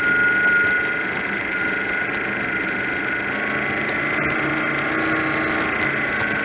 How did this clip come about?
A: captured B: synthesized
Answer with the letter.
A